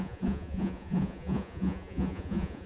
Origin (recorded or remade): remade